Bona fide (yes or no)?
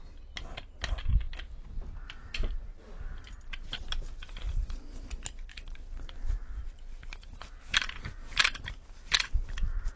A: yes